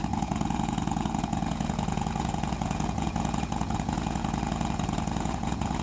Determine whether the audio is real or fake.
fake